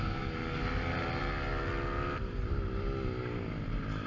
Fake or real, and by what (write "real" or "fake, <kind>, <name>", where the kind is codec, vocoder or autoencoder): real